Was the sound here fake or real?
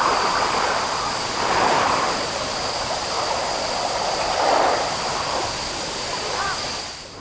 real